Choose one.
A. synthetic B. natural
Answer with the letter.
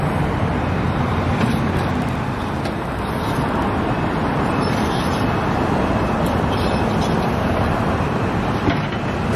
B